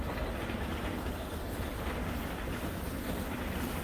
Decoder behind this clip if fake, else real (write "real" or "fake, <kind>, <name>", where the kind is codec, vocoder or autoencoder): real